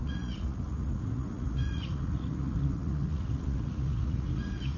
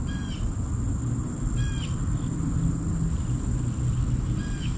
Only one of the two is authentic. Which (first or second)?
second